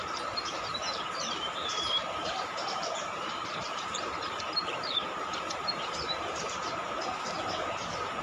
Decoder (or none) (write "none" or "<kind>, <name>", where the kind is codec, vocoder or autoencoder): vocoder, BigVGAN v2